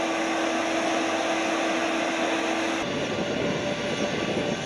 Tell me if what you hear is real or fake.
real